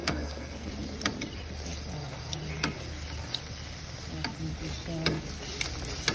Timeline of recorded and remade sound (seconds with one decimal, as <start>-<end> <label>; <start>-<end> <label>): 0.0-0.7 remade; 0.7-6.1 recorded